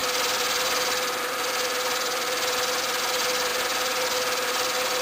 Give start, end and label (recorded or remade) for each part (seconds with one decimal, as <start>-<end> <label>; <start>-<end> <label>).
0.0-5.0 recorded